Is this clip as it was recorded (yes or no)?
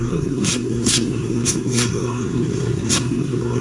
no